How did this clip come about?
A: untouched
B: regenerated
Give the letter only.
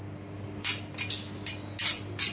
A